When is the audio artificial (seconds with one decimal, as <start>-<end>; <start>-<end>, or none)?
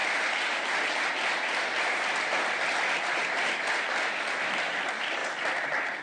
none